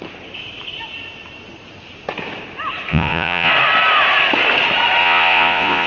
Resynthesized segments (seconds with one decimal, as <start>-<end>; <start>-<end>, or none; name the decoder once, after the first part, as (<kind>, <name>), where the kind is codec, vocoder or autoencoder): 2.9-3.5 (vocoder, Vocos); 5.0-5.9